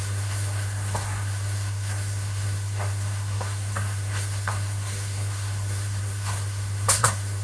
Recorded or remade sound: remade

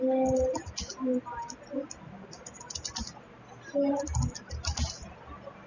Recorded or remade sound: recorded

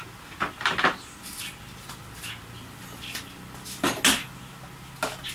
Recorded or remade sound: recorded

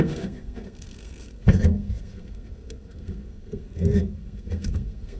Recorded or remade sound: remade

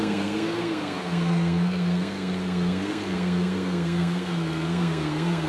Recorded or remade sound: remade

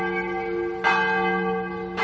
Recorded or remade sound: recorded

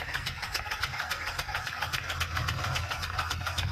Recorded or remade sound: remade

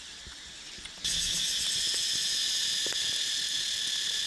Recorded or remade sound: recorded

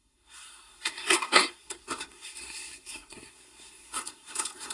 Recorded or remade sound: remade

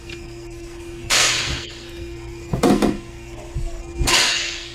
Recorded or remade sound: remade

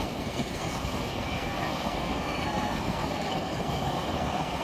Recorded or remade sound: remade